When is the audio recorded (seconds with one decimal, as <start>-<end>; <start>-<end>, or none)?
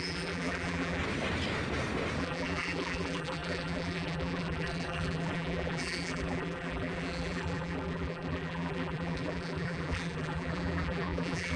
1.0-2.2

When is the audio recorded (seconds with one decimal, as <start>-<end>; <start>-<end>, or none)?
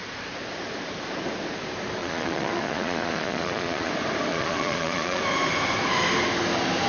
0.0-2.0; 3.9-4.3; 5.2-6.9